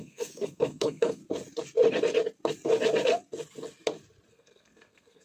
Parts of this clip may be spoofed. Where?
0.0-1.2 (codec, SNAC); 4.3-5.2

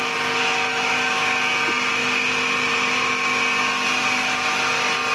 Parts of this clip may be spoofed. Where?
0.7-1.2 (autoencoder, DAC-VAE)